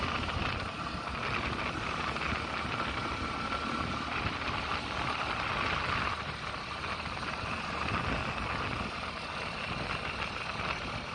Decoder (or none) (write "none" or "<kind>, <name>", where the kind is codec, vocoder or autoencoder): none